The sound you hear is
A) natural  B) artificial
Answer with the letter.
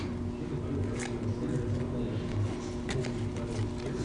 A